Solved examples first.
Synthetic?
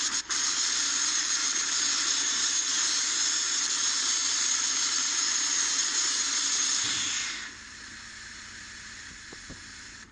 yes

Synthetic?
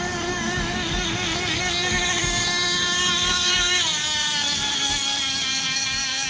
yes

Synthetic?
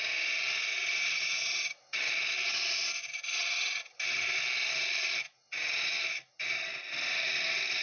no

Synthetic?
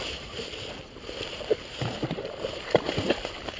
yes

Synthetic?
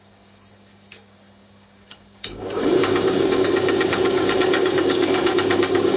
yes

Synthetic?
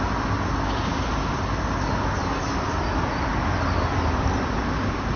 no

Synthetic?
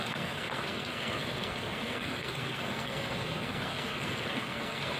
yes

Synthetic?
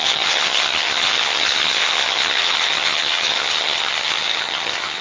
yes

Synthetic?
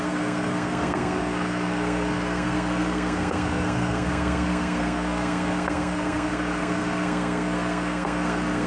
yes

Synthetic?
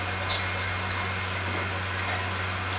no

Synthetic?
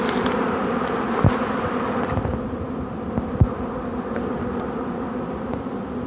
no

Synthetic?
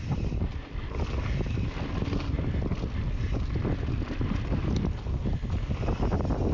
no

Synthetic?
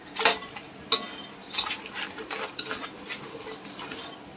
no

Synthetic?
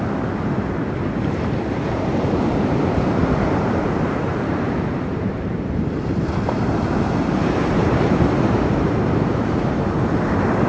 yes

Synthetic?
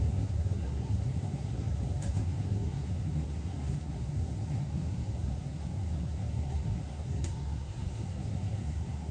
yes